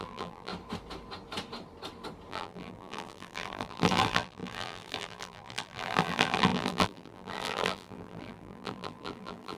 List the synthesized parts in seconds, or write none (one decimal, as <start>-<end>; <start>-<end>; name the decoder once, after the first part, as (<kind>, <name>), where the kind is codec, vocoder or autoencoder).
0.0-0.5 (vocoder, BigVGAN v2); 2.3-9.6

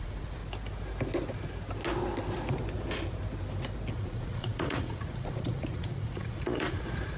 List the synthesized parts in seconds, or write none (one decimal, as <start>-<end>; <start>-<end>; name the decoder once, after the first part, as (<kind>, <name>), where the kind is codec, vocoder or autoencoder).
0.0-0.4 (vocoder, Vocos); 3.9-7.2

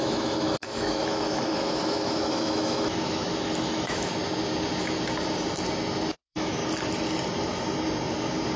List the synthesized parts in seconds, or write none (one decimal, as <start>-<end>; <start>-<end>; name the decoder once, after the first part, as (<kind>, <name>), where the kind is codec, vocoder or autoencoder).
0.0-4.2 (autoencoder, DAC-VAE); 6.1-6.6

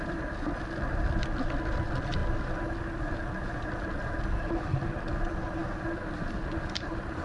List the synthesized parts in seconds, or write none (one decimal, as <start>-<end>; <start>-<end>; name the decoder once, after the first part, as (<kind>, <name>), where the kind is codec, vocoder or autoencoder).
0.0-2.2 (vocoder, BigVGAN v2); 5.1-7.2

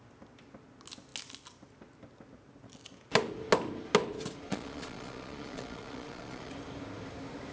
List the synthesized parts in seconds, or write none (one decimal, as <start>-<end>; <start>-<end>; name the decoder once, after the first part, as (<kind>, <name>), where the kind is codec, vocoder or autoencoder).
4.5-6.5 (vocoder, Vocos)

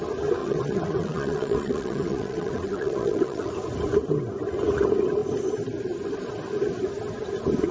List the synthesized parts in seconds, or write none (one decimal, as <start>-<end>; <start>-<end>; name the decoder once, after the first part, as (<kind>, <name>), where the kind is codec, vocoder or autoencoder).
0.4-3.5 (vocoder, WaveNeXt)

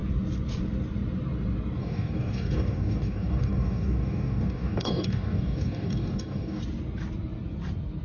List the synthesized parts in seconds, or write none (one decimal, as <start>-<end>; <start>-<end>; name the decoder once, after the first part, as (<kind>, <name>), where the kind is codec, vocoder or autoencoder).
1.8-6.6 (codec, DAC)